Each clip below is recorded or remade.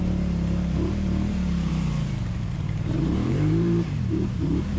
remade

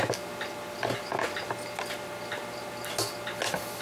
recorded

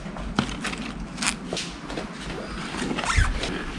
recorded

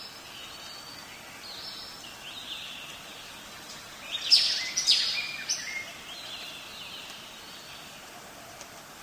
recorded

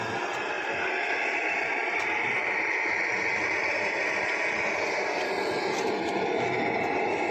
recorded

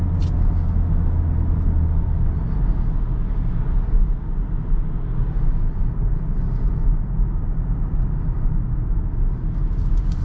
recorded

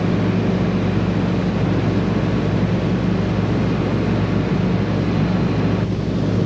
recorded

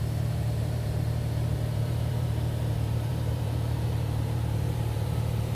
remade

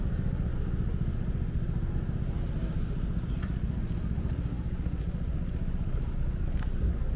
recorded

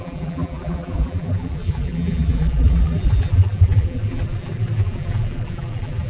remade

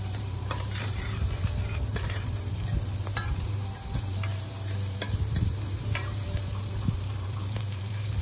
remade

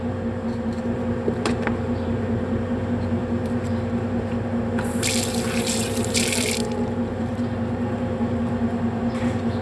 remade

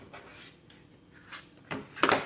recorded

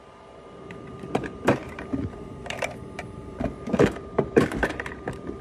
remade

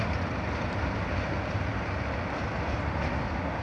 recorded